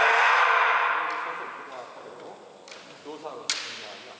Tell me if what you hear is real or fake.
real